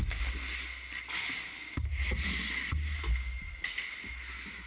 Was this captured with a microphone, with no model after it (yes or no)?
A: yes